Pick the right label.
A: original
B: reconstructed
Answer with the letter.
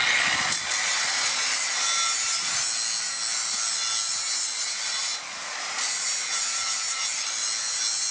A